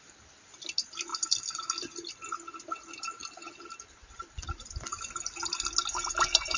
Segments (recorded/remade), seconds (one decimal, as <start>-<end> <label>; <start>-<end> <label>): 0.0-6.6 recorded